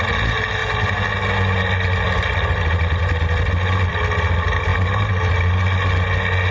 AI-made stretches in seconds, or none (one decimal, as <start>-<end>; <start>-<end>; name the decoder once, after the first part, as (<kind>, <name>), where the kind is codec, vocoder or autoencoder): none

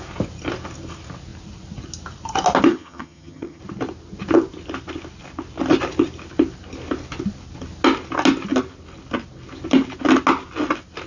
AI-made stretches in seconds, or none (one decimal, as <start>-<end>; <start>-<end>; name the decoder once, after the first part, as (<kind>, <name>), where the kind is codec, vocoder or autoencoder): 2.7-3.6 (vocoder, HiFi-GAN)

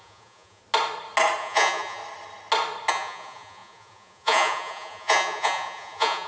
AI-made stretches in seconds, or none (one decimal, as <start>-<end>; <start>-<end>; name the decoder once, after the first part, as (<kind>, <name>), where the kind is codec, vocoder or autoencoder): 0.0-0.6 (vocoder, Vocos); 1.4-2.0; 2.9-6.3